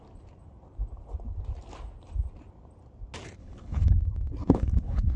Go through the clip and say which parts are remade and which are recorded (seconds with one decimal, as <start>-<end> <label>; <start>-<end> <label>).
0.0-3.4 recorded; 3.4-4.0 remade; 4.0-4.4 recorded; 4.4-5.2 remade